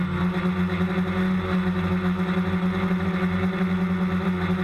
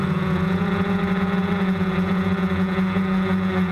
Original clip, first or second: first